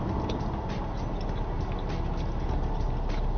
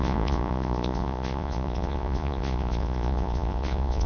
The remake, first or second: second